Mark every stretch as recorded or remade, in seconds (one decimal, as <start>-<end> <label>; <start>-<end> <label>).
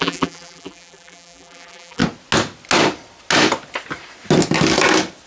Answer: 0.0-2.0 remade; 2.0-5.3 recorded